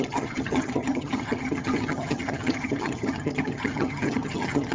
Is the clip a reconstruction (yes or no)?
yes